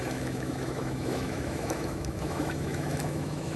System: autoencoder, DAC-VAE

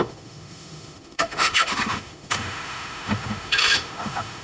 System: autoencoder, DAC-VAE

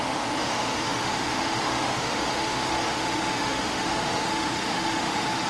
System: autoencoder, DAC-VAE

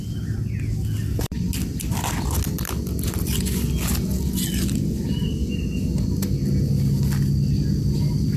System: none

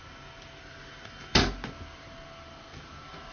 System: none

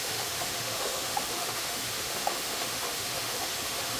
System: autoencoder, DAC-VAE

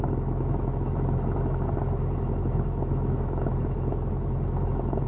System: autoencoder, DAC-VAE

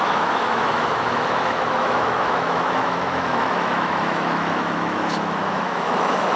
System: autoencoder, DAC-VAE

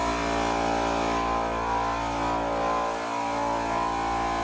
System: none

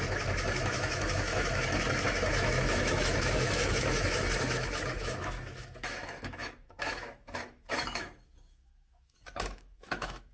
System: autoencoder, DAC-VAE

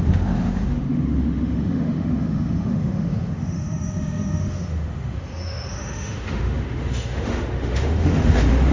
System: autoencoder, DAC-VAE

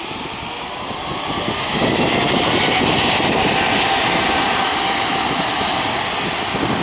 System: none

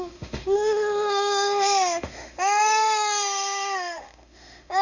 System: autoencoder, DAC-VAE